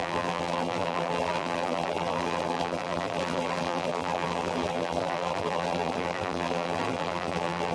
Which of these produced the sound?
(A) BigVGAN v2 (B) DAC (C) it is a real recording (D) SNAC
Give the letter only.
A